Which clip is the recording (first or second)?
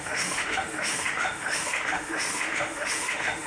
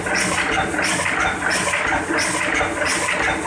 second